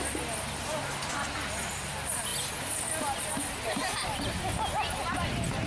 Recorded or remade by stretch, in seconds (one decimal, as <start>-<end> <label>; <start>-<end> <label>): 0.0-5.7 recorded